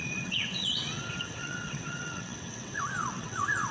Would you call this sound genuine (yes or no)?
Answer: no